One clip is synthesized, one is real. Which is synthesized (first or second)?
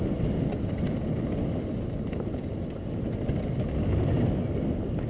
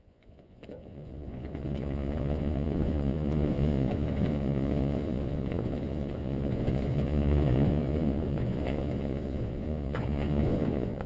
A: second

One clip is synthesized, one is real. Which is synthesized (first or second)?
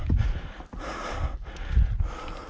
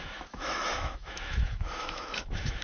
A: second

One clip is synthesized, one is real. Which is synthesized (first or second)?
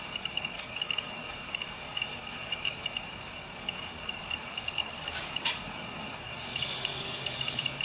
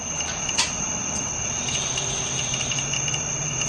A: first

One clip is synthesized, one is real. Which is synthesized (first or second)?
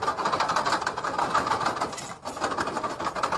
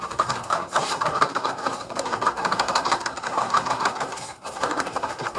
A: second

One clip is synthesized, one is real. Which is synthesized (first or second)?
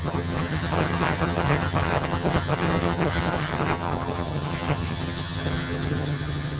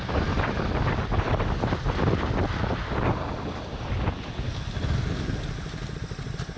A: first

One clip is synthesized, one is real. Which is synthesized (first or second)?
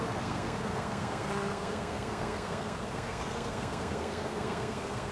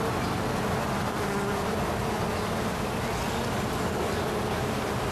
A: first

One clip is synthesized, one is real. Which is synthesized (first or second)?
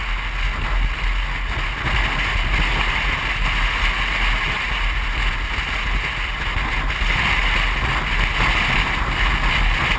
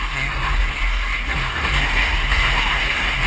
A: second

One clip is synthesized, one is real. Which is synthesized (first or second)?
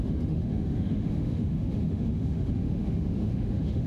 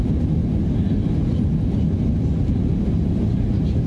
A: first